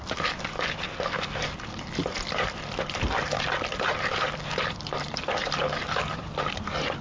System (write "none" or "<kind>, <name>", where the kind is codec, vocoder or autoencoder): none